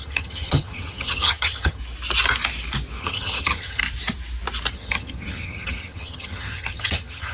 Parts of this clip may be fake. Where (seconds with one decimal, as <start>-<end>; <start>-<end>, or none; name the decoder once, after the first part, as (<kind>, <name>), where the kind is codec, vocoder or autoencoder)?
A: 0.0-1.8 (vocoder, HiFi-GAN); 3.0-3.8; 4.7-7.3